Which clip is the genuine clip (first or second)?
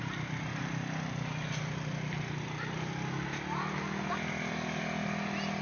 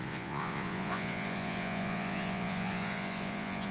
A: first